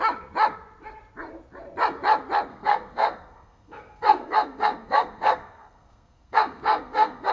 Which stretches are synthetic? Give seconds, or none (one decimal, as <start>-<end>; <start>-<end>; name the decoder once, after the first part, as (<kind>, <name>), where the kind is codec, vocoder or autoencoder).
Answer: 2.5-7.3 (codec, SNAC)